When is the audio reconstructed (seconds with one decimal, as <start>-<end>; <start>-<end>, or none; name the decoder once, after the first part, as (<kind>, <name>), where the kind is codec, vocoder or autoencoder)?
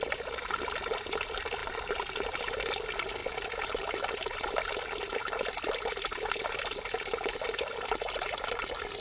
1.6-2.6 (vocoder, BigVGAN v2)